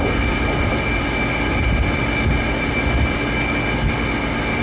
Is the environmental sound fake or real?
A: real